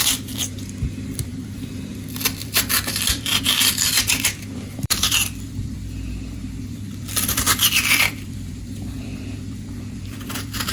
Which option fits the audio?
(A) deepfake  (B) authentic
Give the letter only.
A